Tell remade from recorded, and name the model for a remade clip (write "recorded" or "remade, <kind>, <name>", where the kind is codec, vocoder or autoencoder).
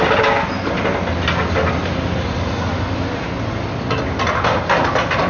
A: recorded